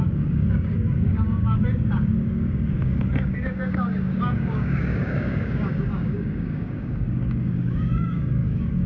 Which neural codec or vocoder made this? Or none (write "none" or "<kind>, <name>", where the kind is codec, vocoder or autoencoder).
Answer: codec, DAC